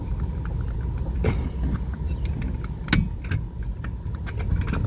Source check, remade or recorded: recorded